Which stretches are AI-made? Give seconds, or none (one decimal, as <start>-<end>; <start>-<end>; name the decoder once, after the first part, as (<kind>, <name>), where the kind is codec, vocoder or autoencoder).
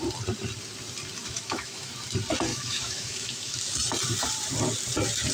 1.2-1.9 (autoencoder, DAC-VAE); 2.5-3.6